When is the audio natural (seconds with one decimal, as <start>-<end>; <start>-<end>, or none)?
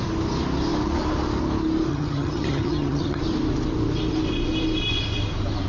0.0-1.9; 3.2-5.7